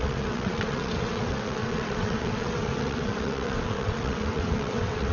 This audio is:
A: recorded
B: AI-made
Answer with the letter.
B